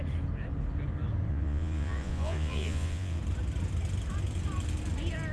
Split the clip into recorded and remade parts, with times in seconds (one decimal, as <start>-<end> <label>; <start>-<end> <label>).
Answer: 0.0-1.3 recorded; 1.3-3.2 remade; 3.2-5.3 recorded